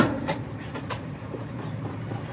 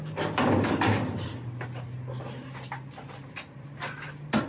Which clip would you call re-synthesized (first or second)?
first